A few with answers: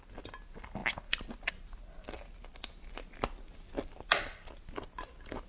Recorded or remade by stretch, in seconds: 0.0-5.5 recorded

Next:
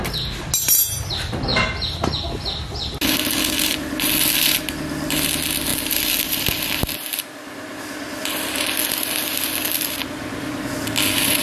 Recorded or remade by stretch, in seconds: 0.0-11.4 recorded

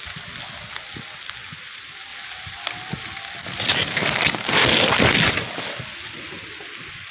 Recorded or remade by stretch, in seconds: 0.0-7.1 recorded